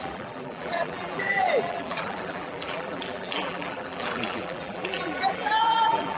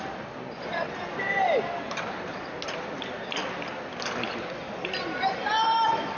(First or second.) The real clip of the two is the second